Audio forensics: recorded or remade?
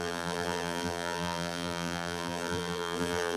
remade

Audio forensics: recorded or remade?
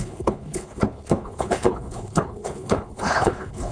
remade